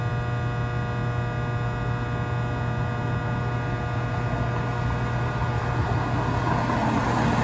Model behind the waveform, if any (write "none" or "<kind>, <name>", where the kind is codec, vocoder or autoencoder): none